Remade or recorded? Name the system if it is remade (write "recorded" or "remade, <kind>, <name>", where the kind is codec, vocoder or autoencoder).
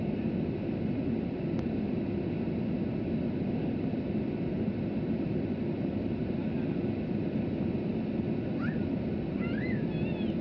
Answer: recorded